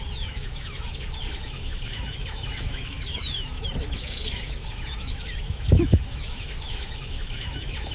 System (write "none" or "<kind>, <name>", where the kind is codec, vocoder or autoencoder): autoencoder, DAC-VAE